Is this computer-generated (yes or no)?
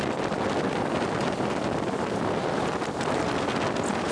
no